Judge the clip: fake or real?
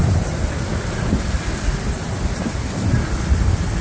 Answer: real